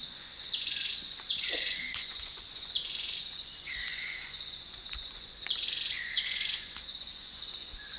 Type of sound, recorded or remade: remade